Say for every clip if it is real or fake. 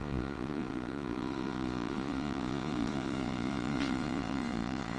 fake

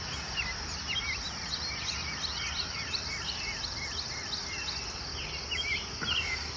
real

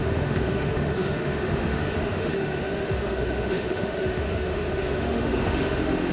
fake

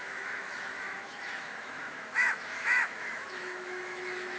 fake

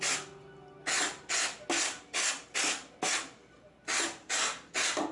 real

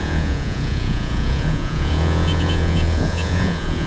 fake